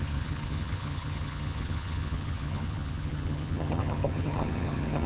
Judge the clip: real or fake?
fake